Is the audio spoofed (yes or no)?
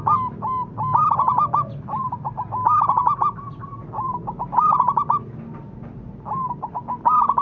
no